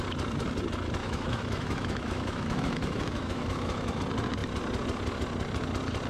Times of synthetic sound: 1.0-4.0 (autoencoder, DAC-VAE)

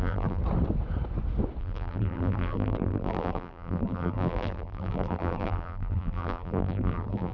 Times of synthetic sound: 0.0-0.4 (vocoder, BigVGAN v2); 1.6-7.3

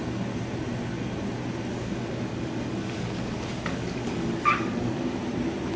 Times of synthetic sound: 1.7-5.2 (codec, DAC)